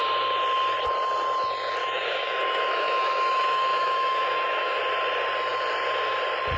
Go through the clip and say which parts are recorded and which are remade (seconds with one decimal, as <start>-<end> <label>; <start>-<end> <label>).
0.0-1.8 recorded; 1.8-4.8 remade; 4.8-6.6 recorded